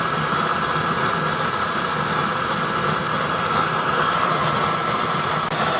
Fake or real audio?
real